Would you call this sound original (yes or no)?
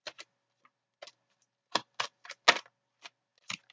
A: yes